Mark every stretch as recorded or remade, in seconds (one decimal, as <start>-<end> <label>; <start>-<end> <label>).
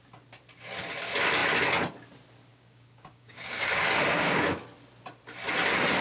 0.0-2.5 recorded; 2.5-4.0 remade; 4.0-6.0 recorded